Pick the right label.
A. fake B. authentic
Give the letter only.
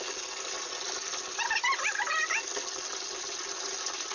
B